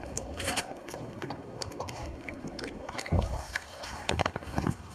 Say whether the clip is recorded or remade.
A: remade